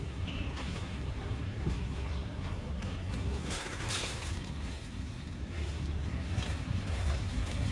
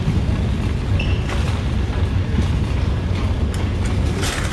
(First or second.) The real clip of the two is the second